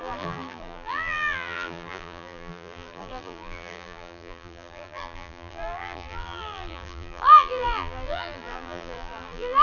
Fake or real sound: fake